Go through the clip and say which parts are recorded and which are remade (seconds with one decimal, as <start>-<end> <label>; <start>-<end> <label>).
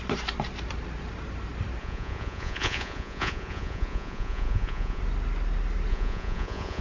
0.0-1.8 recorded; 1.8-5.0 remade; 5.0-5.9 recorded; 5.9-6.8 remade